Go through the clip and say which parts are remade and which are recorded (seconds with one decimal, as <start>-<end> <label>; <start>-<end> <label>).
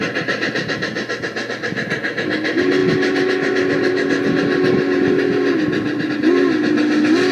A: 0.0-7.3 recorded